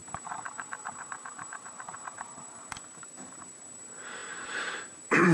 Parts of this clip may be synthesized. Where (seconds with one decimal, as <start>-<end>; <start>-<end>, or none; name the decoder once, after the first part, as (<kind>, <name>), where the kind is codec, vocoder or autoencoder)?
0.0-5.3 (vocoder, BigVGAN v2)